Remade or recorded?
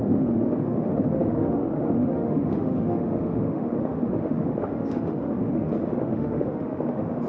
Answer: remade